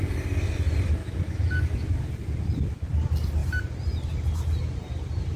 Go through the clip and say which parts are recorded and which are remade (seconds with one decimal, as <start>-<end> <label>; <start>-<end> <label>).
0.0-1.0 recorded; 1.0-2.1 remade; 2.1-5.4 recorded